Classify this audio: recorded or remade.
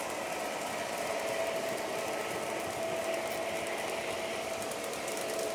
recorded